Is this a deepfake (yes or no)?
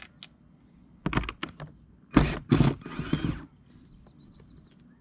no